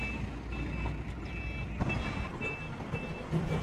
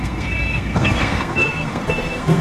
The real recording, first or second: first